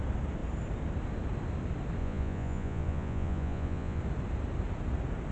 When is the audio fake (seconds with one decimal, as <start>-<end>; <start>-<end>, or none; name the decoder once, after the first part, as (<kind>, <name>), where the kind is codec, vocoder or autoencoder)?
2.0-4.0 (vocoder, Vocos)